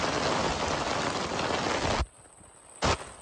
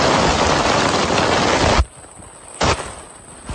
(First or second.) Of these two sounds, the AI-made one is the second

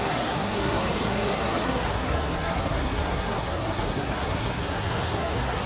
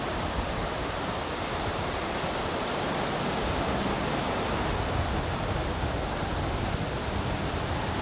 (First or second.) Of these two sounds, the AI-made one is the first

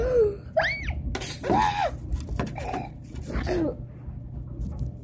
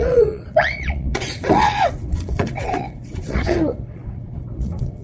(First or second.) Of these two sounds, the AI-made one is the second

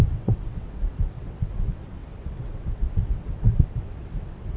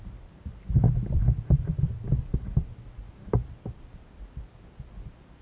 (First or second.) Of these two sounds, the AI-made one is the first